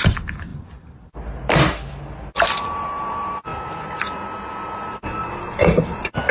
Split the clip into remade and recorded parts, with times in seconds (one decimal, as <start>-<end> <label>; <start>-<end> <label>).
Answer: 0.0-6.3 recorded